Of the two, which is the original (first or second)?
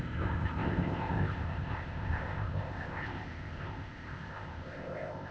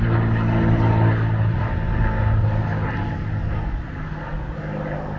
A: second